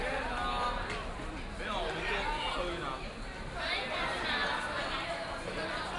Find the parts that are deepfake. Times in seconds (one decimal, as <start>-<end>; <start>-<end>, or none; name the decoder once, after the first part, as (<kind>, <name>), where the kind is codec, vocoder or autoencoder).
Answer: 2.9-4.0 (vocoder, BigVGAN v2); 4.4-5.1